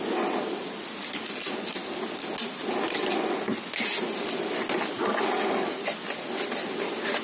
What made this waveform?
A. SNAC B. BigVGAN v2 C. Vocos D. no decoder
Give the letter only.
D